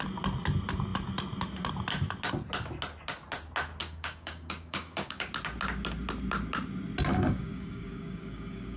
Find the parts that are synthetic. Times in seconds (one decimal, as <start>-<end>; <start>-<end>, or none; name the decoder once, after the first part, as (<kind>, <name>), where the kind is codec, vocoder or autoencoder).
3.8-5.3 (codec, DAC); 7.1-8.8